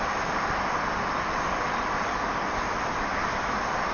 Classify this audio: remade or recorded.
recorded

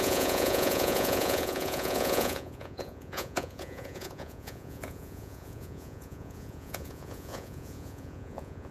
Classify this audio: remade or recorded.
remade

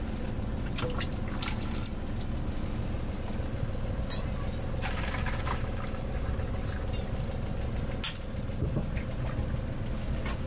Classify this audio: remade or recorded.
recorded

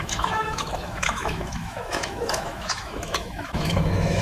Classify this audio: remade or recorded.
remade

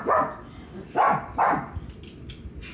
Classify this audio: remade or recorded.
recorded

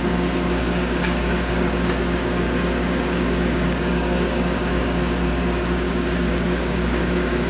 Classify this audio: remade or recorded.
remade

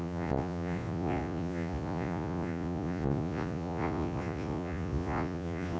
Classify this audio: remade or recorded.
remade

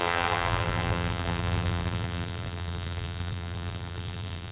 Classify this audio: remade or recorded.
remade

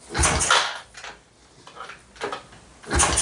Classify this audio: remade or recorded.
recorded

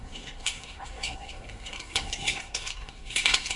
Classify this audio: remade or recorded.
remade